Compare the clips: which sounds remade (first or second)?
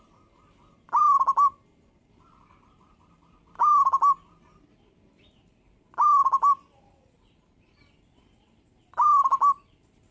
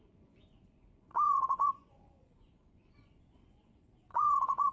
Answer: second